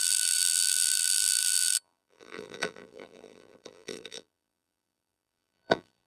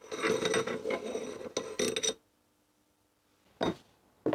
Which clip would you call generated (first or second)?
first